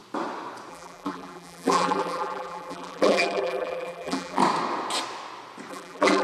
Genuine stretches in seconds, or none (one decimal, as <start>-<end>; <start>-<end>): 0.0-0.7; 4.4-5.7